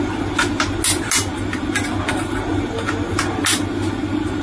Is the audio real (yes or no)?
yes